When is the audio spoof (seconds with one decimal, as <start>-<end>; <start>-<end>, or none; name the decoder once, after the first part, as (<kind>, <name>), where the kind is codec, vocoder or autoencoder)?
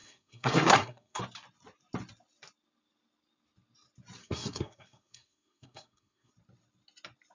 0.0-1.2 (codec, SNAC); 4.2-6.3